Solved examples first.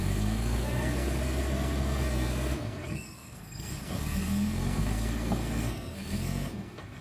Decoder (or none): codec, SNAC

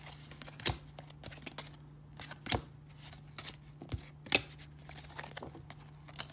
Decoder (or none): none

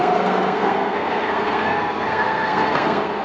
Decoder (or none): codec, SNAC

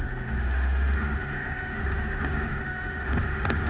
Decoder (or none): autoencoder, DAC-VAE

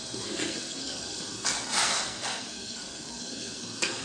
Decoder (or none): codec, SNAC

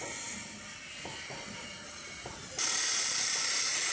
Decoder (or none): none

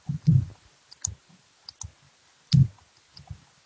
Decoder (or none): none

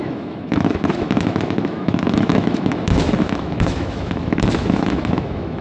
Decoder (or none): autoencoder, DAC-VAE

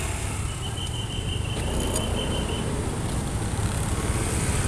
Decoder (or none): none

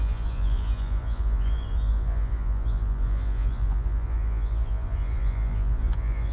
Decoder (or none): vocoder, Vocos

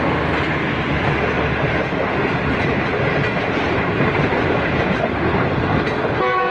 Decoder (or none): none